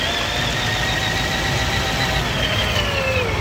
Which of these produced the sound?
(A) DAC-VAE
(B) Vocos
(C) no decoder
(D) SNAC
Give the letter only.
C